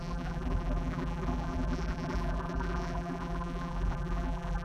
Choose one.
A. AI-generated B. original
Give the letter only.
A